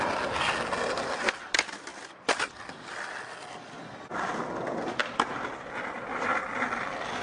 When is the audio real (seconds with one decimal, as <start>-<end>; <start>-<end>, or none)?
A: 0.0-7.2